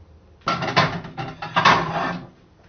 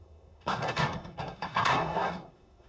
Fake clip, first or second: second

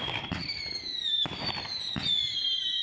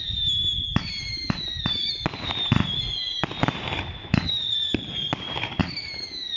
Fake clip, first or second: first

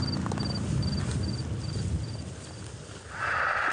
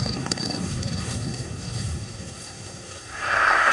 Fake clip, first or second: second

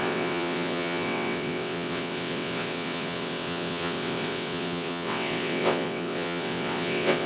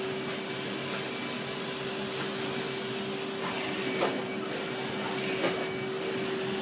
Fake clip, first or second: first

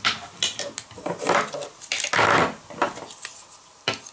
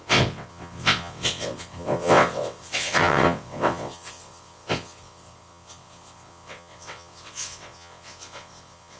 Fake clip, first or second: second